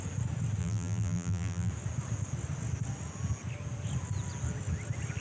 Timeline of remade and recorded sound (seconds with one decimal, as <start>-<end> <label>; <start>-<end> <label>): 0.0-0.6 recorded; 0.6-1.7 remade; 1.7-5.2 recorded